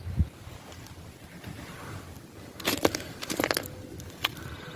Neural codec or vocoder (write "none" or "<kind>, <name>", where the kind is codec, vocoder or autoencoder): none